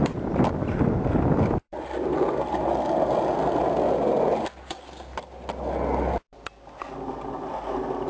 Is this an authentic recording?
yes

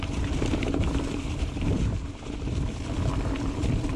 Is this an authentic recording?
no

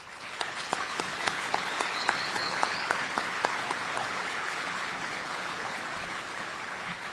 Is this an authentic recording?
no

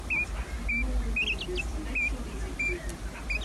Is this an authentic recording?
yes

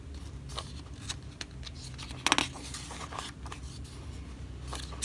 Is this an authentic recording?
yes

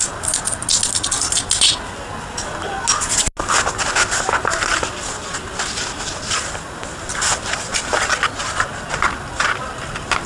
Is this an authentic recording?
yes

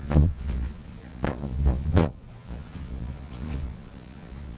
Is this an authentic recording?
no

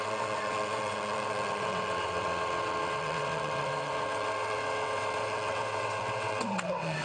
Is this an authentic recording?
no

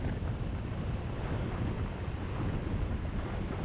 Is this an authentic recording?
yes